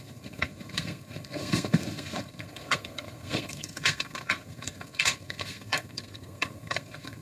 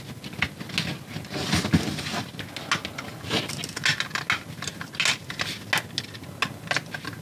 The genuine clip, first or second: second